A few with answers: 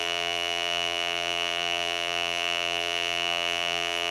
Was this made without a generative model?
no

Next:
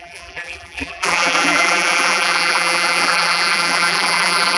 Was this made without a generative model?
no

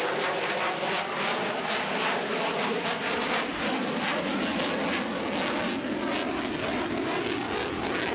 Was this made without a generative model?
yes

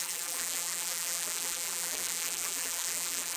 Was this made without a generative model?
no